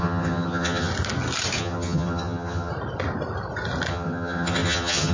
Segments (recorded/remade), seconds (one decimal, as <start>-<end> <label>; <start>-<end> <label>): 0.0-0.9 remade; 0.9-1.6 recorded; 1.6-2.7 remade; 2.7-3.9 recorded; 3.9-5.1 remade